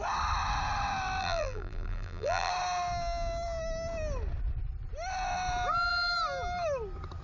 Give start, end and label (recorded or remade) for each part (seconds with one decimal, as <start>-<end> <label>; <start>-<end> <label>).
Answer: 0.0-1.2 recorded; 1.2-2.5 remade; 2.5-7.2 recorded